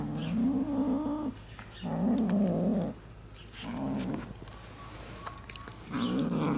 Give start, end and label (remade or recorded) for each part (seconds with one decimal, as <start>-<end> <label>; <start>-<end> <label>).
0.0-6.6 recorded